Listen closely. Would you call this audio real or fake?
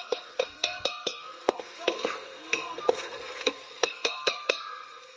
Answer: fake